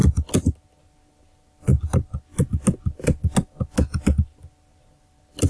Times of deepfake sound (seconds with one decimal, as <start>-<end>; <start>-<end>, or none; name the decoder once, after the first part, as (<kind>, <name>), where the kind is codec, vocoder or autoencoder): none